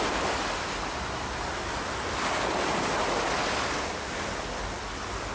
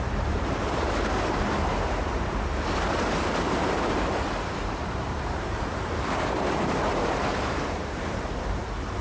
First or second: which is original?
first